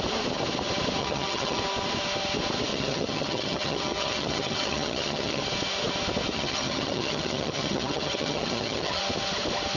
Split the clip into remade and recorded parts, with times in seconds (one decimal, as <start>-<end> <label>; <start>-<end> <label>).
0.0-1.0 recorded; 1.0-1.6 remade; 1.6-2.7 recorded; 2.7-5.4 remade; 5.4-6.3 recorded; 6.3-9.0 remade; 9.0-9.8 recorded